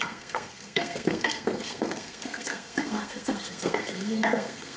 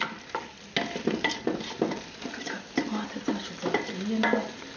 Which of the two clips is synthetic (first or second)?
first